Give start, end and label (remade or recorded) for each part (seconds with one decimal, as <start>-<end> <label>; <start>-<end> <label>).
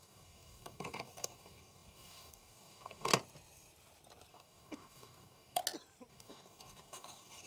0.0-3.1 remade; 3.1-4.3 recorded; 4.3-5.6 remade; 5.6-6.1 recorded; 6.1-7.5 remade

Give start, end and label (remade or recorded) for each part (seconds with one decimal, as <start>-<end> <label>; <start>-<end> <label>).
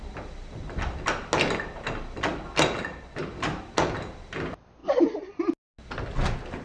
0.0-6.6 recorded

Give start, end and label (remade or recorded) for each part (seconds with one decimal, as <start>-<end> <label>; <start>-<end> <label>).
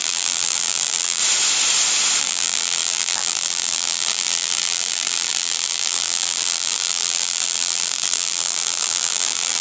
0.0-1.2 remade; 1.2-2.2 recorded; 2.2-9.6 remade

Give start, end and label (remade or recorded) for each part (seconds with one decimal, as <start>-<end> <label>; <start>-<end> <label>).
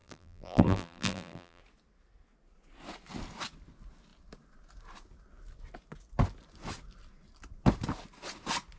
0.0-1.6 remade; 1.6-8.8 recorded